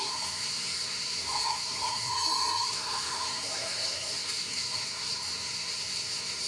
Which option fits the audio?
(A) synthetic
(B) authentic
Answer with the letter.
A